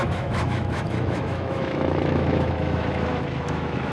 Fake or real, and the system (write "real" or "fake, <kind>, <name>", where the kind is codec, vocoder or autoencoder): fake, autoencoder, DAC-VAE